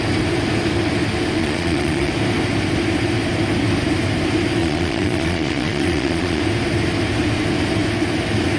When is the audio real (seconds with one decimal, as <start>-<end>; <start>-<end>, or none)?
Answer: 0.0-1.4; 2.1-4.6; 6.4-8.6